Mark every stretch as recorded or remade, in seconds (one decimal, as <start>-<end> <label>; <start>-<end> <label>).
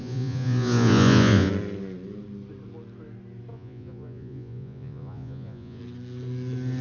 0.0-1.5 remade; 1.5-3.5 recorded; 3.5-5.8 remade; 5.8-6.8 recorded